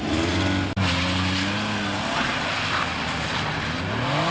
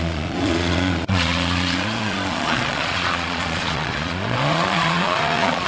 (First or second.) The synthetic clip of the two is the second